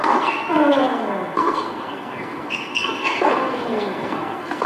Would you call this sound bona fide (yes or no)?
no